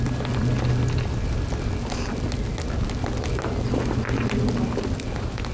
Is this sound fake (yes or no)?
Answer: no